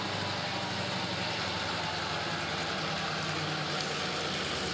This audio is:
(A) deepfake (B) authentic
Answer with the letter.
B